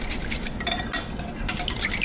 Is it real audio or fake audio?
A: real